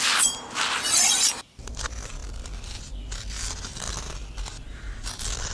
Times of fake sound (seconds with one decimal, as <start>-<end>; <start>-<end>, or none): none